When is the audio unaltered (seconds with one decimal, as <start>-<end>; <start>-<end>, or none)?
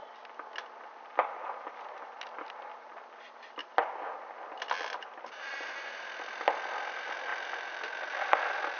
0.0-8.8